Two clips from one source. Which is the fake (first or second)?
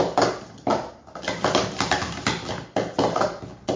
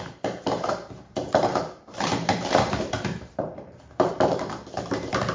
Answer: second